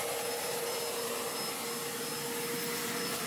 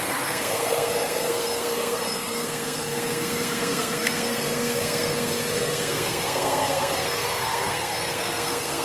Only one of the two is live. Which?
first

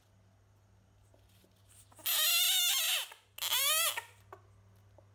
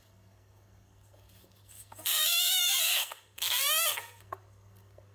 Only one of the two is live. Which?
first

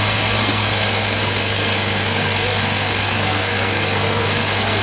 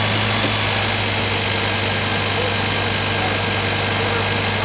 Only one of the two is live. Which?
second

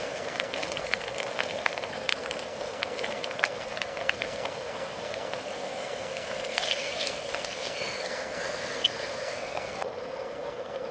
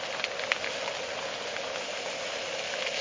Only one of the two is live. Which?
second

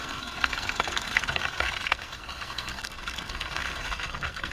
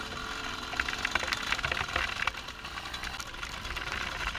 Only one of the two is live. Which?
second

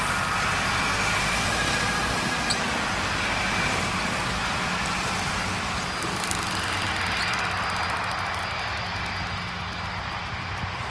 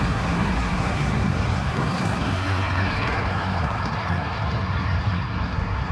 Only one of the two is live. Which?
first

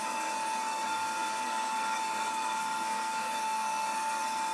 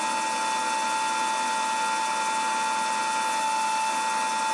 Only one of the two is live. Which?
second